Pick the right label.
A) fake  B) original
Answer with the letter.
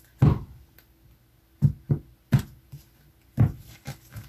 B